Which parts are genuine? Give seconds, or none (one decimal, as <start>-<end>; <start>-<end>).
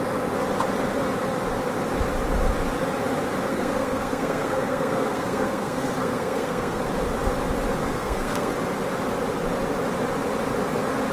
0.0-3.5; 6.8-7.8; 8.5-11.1